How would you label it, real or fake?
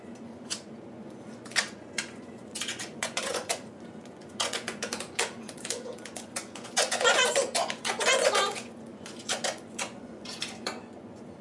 fake